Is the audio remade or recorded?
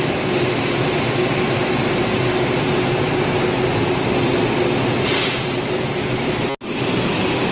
recorded